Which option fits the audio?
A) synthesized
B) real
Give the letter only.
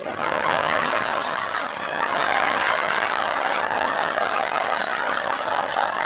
A